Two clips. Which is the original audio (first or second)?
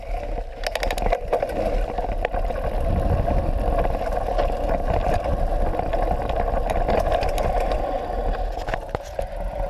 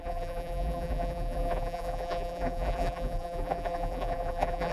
first